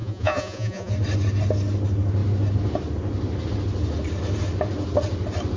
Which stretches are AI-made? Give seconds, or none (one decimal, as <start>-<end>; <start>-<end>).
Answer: 0.0-0.9